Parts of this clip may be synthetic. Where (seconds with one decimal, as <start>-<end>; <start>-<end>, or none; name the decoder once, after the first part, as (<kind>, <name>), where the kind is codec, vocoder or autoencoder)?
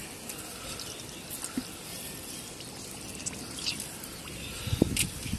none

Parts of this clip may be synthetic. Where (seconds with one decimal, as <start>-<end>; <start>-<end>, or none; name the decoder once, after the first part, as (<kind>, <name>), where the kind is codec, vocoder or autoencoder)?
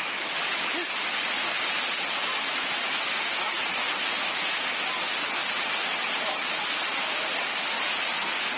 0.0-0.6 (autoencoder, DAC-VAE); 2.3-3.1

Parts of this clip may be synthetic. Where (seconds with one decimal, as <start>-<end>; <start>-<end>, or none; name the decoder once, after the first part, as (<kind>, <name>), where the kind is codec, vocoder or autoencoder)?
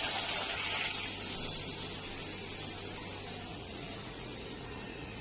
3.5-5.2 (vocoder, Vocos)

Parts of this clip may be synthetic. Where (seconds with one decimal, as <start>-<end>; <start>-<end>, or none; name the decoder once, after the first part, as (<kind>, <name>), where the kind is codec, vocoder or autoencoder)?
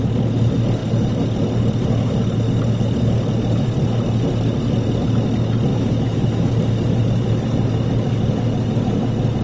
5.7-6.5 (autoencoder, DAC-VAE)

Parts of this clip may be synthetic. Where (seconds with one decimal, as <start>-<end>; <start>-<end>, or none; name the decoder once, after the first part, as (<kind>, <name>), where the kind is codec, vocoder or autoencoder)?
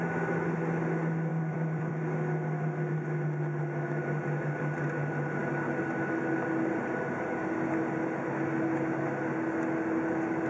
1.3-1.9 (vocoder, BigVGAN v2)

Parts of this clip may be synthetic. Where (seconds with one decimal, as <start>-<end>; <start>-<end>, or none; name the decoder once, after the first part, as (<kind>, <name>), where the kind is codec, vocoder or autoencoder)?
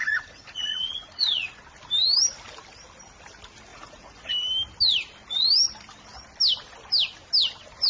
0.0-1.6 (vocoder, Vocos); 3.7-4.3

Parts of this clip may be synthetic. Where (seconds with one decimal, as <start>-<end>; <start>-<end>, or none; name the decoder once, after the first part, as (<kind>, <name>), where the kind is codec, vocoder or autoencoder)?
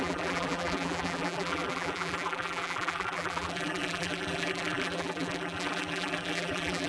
0.0-6.9 (vocoder, BigVGAN v2)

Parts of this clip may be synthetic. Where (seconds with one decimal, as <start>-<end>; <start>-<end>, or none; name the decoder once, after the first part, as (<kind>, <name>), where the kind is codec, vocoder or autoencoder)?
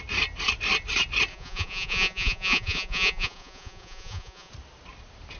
1.3-4.5 (vocoder, Vocos)